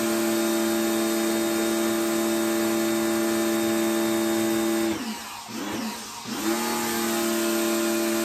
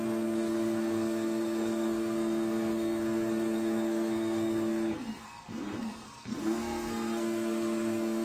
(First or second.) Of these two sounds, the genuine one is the first